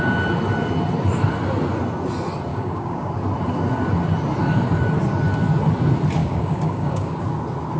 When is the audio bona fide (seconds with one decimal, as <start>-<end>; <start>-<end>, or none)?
0.0-2.5; 3.1-6.2; 7.2-7.8